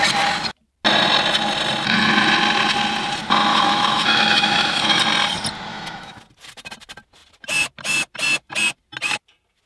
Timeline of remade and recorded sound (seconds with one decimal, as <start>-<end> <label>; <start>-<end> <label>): 0.0-3.5 recorded; 3.5-5.0 remade; 5.0-5.7 recorded; 5.7-6.2 remade; 6.2-9.7 recorded